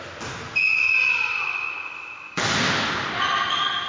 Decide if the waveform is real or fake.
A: real